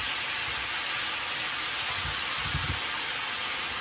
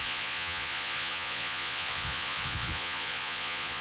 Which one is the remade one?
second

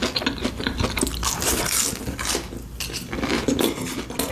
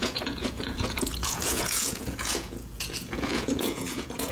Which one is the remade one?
second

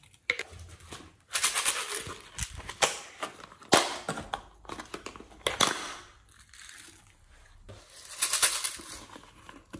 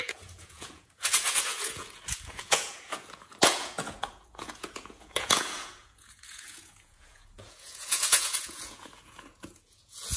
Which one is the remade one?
second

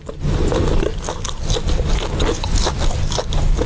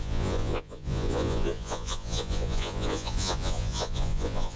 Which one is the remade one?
second